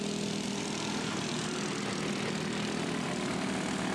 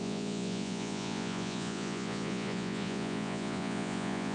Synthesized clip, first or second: second